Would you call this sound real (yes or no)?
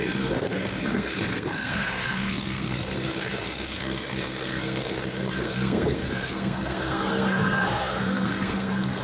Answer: no